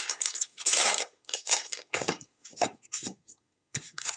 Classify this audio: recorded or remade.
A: remade